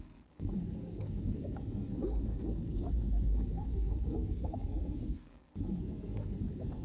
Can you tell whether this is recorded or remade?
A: remade